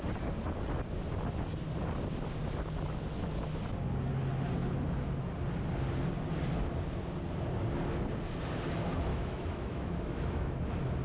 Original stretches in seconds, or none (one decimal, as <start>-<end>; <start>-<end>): 0.0-9.1; 10.6-11.0